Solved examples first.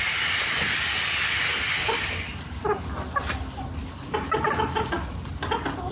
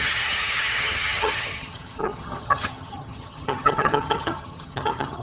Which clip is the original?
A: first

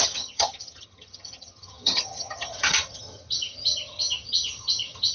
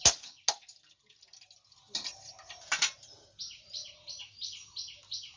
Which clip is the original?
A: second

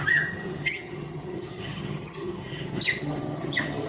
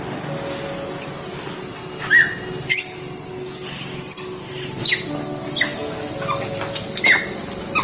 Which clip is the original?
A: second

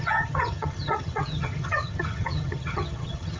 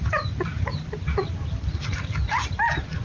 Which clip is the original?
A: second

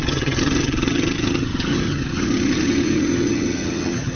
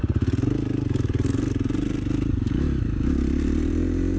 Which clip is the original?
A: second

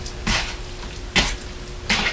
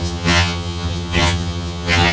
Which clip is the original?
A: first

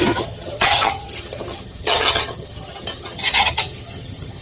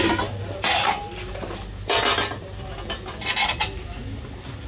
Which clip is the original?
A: second